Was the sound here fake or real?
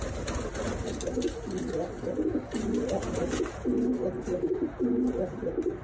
real